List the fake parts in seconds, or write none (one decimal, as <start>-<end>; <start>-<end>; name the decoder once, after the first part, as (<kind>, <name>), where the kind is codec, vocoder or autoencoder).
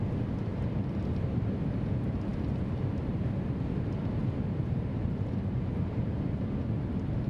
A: 4.2-6.0 (vocoder, BigVGAN v2)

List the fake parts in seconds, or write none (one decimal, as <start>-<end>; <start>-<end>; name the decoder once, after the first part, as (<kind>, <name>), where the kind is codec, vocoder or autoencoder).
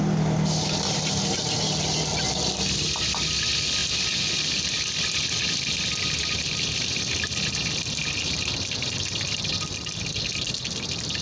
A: none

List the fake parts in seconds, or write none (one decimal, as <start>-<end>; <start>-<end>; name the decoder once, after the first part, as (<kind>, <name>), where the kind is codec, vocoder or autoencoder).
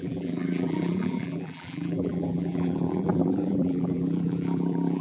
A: 0.0-5.0 (vocoder, BigVGAN v2)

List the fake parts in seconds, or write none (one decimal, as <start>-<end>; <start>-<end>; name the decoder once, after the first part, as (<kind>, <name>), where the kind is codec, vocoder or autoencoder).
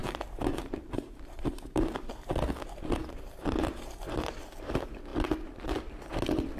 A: 0.0-2.3 (vocoder, BigVGAN v2)